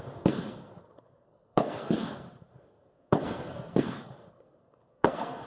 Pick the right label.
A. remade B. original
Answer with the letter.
A